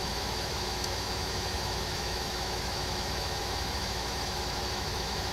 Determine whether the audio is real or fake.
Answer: fake